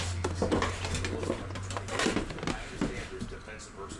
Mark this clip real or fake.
real